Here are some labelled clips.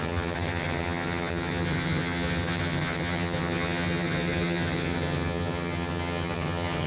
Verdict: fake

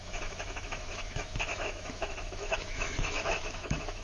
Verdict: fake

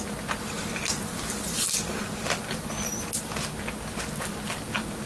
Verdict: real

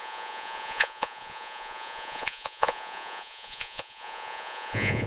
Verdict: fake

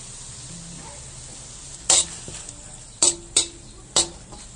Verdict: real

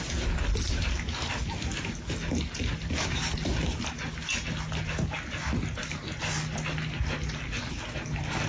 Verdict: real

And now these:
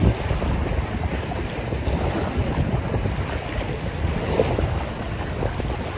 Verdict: real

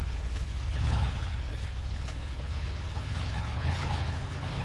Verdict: fake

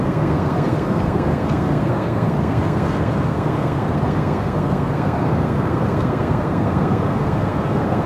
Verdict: fake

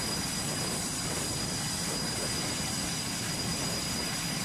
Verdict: real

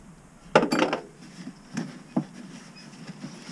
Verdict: real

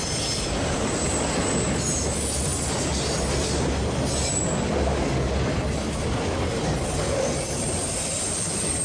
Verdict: real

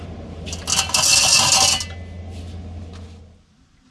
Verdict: real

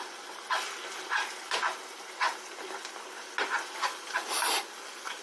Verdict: real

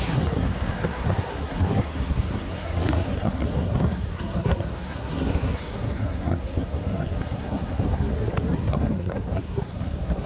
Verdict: fake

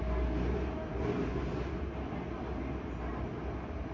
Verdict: real